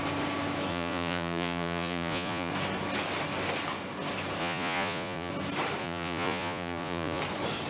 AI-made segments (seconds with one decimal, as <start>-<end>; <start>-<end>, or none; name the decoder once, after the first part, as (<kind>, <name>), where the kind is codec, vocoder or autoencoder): 0.7-2.5 (vocoder, Vocos); 4.4-5.3; 5.8-7.2